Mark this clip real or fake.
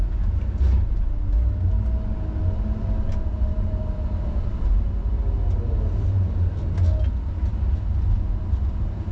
real